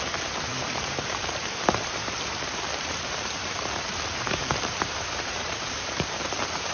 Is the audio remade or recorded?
remade